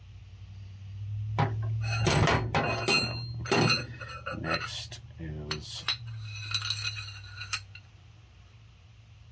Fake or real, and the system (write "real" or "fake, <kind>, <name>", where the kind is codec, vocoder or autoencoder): real